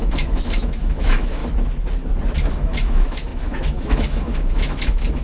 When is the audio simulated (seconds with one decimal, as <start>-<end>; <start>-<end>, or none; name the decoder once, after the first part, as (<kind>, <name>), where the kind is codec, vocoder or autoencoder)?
0.0-1.4 (autoencoder, DAC-VAE); 2.5-5.2